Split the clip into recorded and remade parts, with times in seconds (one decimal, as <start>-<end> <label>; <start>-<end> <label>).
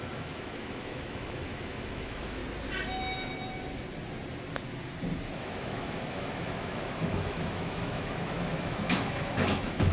0.0-2.4 remade; 2.4-5.4 recorded; 5.4-9.9 remade